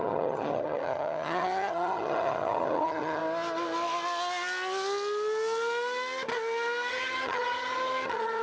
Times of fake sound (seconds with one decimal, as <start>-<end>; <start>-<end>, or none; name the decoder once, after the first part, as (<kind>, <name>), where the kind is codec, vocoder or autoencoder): 0.0-3.2 (vocoder, HiFi-GAN); 6.9-8.4